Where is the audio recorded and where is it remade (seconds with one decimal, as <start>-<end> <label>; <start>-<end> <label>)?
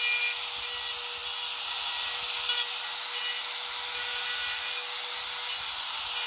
0.0-6.3 recorded